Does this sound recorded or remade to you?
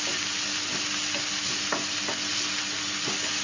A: recorded